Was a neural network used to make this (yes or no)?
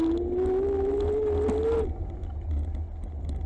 no